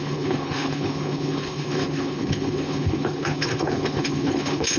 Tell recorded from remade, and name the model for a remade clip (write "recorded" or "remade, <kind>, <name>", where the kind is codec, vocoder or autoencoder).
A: remade, codec, HILCodec